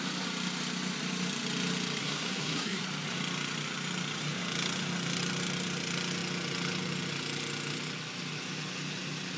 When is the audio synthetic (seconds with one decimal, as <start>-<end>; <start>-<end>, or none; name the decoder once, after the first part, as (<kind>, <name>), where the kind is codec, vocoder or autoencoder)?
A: 2.0-2.8 (codec, SNAC)